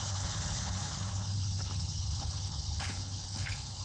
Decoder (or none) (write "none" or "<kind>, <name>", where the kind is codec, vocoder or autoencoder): codec, HILCodec